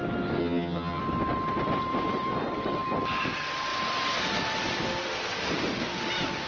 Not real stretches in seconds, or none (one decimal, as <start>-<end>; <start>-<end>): 0.4-1.0